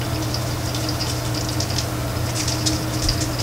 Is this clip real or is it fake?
real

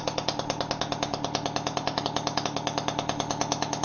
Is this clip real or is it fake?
real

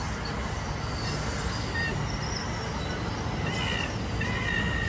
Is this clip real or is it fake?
real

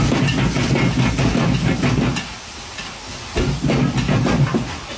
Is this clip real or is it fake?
real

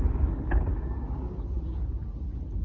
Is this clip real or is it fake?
real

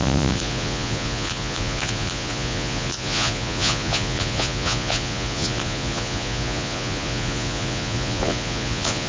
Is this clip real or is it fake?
fake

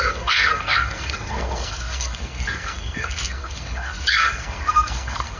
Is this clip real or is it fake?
fake